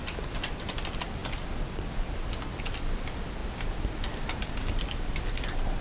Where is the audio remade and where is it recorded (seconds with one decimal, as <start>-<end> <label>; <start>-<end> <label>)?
0.0-5.8 recorded